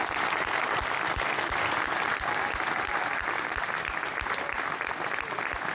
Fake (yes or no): no